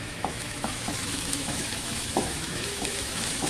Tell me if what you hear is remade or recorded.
remade